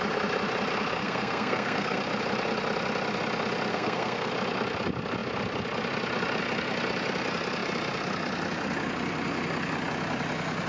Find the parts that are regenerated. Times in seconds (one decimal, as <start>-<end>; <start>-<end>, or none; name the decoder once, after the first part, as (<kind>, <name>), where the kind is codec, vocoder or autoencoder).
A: 1.0-2.0 (codec, SNAC); 3.7-4.3